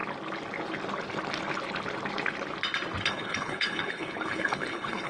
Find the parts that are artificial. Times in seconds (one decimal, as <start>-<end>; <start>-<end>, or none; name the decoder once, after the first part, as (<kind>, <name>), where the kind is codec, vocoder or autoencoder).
3.1-5.1 (codec, HILCodec)